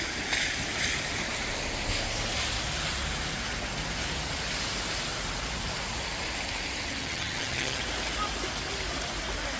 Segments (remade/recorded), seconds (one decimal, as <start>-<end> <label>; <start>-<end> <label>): 0.0-7.0 recorded; 7.0-7.8 remade; 7.8-9.6 recorded